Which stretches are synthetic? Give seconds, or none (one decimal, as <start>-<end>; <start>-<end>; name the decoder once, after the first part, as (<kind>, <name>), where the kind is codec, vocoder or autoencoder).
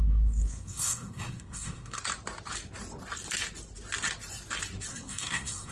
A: 0.0-2.0 (codec, SNAC); 4.9-5.7